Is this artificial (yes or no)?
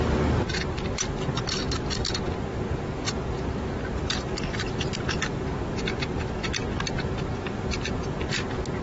no